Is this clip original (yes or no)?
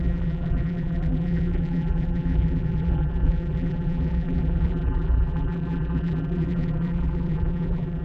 no